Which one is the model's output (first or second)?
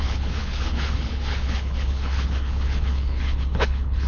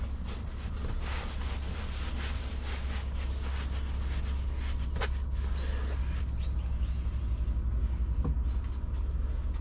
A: first